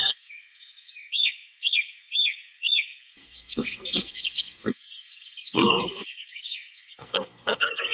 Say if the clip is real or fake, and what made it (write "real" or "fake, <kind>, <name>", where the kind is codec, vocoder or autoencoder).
fake, codec, SNAC